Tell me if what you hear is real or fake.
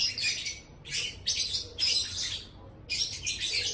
real